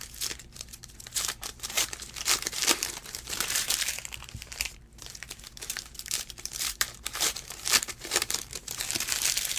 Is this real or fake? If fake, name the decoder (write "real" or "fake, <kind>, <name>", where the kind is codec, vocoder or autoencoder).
fake, vocoder, BigVGAN v2